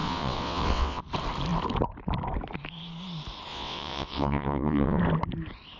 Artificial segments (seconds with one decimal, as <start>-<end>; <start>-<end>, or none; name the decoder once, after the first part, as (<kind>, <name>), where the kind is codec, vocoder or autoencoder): 0.0-1.0 (vocoder, WaveNeXt); 3.5-5.0